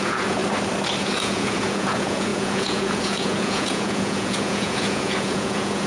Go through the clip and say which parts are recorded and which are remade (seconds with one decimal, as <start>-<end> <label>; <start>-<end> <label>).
0.0-0.4 remade; 0.4-1.0 recorded; 1.0-5.9 remade